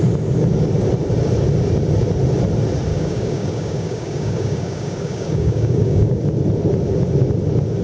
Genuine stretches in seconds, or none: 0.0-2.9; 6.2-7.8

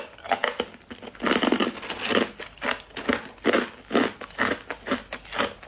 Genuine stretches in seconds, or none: 0.0-5.7

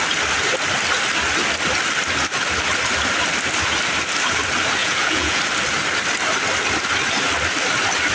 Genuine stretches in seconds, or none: 0.0-4.8; 5.4-8.1

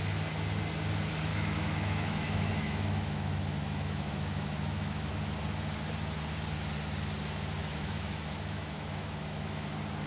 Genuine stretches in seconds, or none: 0.0-1.3; 5.1-7.6; 9.7-10.1

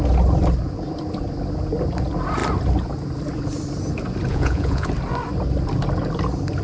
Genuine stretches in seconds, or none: 0.0-4.3; 4.9-6.6

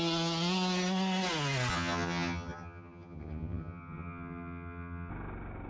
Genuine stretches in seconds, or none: 0.0-1.7; 5.1-5.7

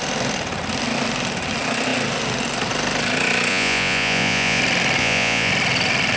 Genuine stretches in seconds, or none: 0.0-3.5; 4.6-5.0; 5.5-6.2